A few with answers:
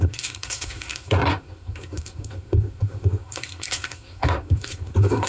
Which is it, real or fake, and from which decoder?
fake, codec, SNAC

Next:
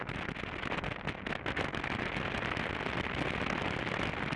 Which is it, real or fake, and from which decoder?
real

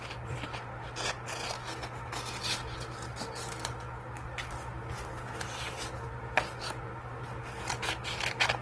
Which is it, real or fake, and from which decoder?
real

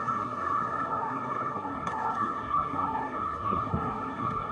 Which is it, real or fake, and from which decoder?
fake, codec, SNAC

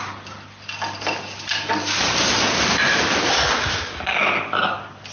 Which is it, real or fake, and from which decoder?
real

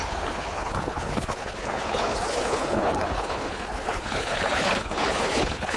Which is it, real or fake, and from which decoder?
fake, codec, HILCodec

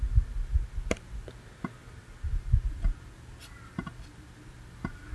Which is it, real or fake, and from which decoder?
real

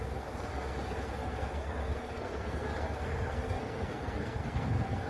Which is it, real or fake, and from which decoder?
fake, codec, SNAC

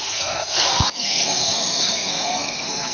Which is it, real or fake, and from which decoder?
fake, codec, SNAC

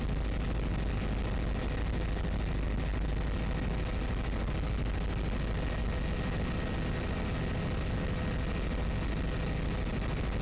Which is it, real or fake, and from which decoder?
real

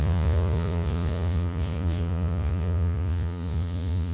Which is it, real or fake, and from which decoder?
fake, vocoder, Vocos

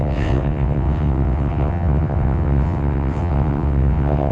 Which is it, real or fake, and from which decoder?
fake, vocoder, WaveNeXt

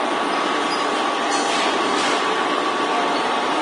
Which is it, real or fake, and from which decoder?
fake, vocoder, BigVGAN v2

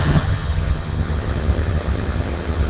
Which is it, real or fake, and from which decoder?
fake, vocoder, HiFi-GAN